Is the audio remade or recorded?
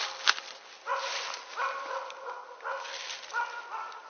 recorded